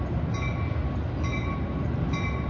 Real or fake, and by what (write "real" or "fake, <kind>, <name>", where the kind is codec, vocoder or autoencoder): real